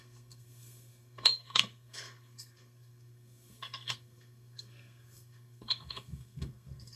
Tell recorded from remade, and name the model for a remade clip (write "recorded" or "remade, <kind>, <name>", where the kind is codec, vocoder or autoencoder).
remade, codec, SNAC